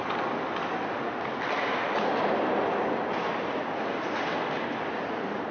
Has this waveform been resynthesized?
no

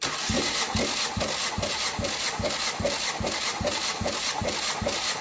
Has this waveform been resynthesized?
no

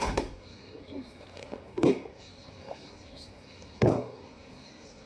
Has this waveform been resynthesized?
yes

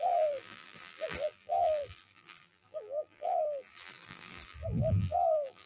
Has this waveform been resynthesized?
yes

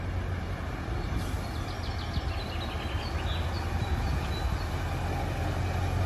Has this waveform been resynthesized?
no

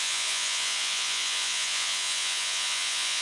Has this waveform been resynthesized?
yes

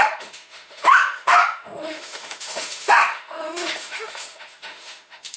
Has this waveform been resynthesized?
yes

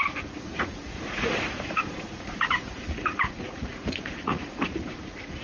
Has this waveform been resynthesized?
yes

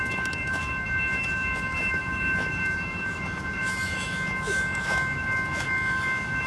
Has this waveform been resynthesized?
yes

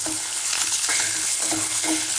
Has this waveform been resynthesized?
yes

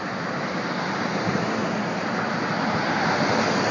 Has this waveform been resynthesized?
no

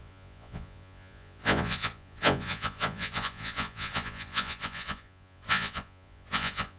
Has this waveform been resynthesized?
yes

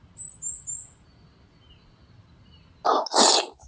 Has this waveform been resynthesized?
no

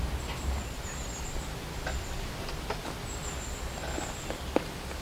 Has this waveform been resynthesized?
no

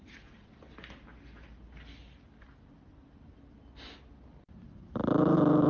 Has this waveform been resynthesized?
no